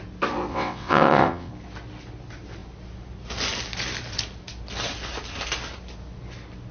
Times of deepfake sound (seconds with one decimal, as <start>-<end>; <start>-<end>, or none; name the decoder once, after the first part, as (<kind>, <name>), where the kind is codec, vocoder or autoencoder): 0.5-1.5 (vocoder, WaveNeXt)